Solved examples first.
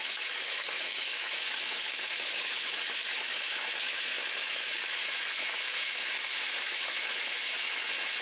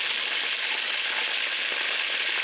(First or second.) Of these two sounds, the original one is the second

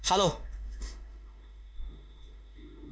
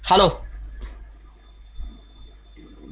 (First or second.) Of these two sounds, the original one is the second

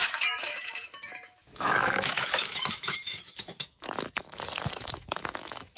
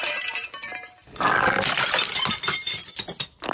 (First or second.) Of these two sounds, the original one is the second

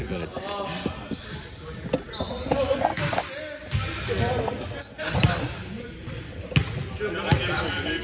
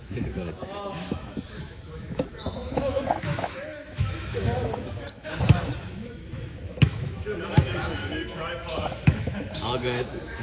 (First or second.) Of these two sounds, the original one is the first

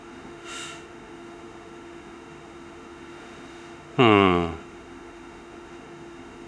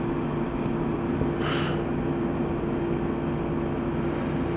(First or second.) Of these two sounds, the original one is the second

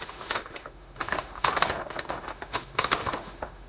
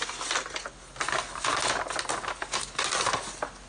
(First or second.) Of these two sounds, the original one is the second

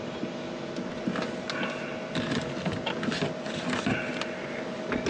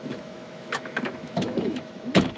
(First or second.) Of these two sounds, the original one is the first